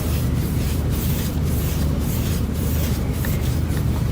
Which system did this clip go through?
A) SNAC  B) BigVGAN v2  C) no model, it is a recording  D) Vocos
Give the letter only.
B